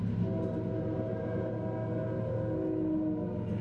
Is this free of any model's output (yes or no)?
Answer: yes